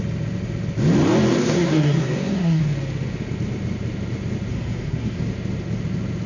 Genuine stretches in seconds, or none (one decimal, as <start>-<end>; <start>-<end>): 0.0-1.3; 2.6-4.5; 5.2-6.3